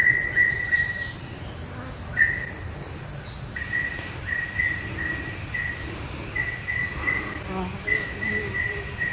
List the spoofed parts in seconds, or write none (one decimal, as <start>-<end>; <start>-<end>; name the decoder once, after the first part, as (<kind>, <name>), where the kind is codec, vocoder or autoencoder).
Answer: none